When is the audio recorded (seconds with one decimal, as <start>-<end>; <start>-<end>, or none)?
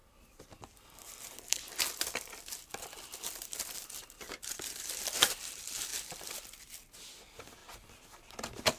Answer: 0.0-0.9